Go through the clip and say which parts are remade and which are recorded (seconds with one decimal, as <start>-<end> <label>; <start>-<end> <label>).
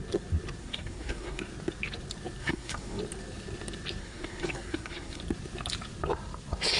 0.0-0.6 recorded; 0.6-1.4 remade; 1.4-2.4 recorded; 2.4-3.0 remade; 3.0-4.0 recorded; 4.0-5.2 remade; 5.2-6.8 recorded